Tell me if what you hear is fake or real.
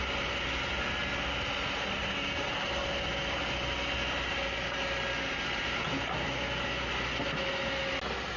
real